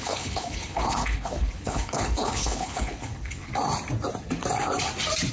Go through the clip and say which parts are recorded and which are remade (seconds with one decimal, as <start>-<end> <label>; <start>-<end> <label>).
0.0-3.5 remade; 3.5-5.3 recorded